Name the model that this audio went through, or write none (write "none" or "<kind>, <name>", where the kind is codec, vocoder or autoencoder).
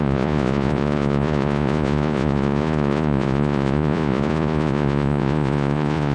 vocoder, Vocos